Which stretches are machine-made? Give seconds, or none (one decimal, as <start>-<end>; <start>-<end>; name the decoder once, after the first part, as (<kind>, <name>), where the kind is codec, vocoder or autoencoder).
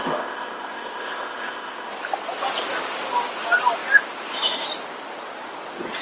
0.0-1.9 (codec, ZipCodec)